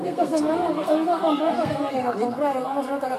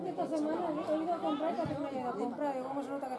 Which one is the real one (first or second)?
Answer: second